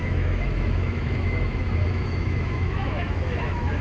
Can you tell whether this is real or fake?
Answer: fake